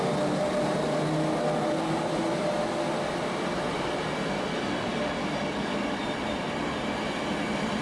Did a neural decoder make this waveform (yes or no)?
no